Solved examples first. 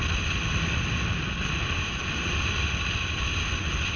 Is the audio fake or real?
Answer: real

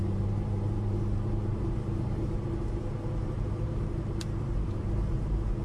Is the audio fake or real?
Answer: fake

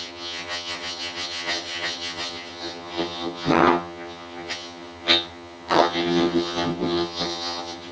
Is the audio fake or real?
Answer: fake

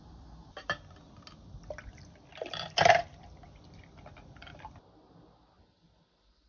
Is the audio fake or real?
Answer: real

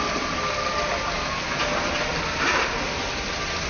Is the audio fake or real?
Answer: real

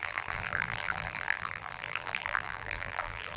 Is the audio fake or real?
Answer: fake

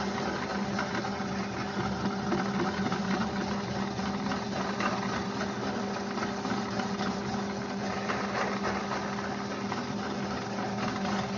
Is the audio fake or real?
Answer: real